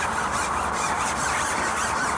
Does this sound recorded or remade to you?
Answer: recorded